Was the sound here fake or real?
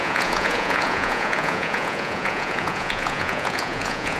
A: fake